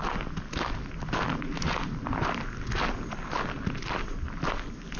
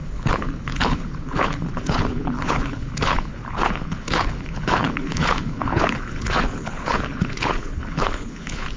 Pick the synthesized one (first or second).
second